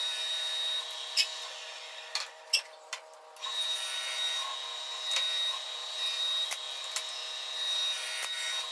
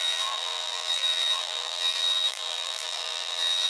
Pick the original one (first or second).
first